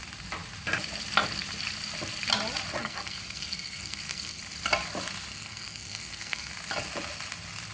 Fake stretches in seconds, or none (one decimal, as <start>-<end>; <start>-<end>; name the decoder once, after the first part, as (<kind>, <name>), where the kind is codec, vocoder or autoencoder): 2.8-4.4 (codec, SNAC); 5.3-6.5